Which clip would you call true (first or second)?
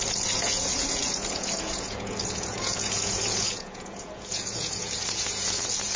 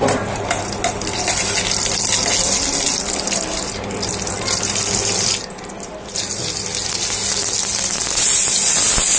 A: second